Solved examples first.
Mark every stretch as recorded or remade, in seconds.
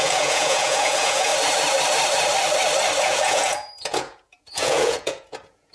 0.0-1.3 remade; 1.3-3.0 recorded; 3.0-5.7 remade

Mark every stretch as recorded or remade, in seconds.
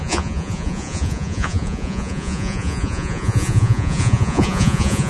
0.0-5.1 remade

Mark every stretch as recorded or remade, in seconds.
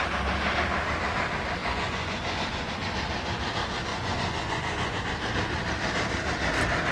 0.0-1.6 recorded; 1.6-2.7 remade; 2.7-3.9 recorded; 3.9-5.0 remade; 5.0-6.9 recorded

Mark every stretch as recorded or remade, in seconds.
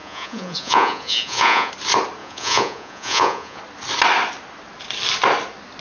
0.0-1.7 remade; 1.7-2.2 recorded; 2.2-3.6 remade; 3.6-5.8 recorded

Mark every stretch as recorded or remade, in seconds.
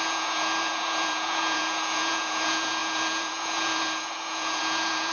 0.0-5.1 remade